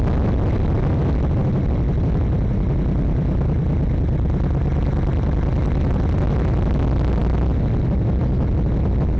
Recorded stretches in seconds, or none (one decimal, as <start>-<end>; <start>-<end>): 0.0-9.2